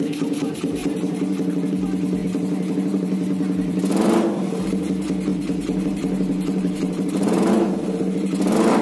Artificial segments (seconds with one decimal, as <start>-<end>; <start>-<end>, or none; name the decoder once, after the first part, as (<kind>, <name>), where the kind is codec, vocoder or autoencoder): 0.8-1.6 (vocoder, BigVGAN v2); 2.2-3.8; 5.3-7.5